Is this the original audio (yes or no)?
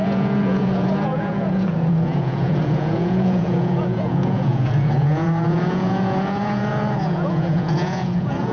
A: no